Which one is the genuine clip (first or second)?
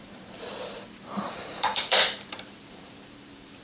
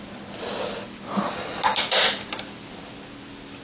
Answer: second